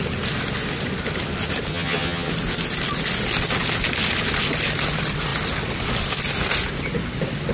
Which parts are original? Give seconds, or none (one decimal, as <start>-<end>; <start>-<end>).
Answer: 0.0-1.7; 2.3-7.5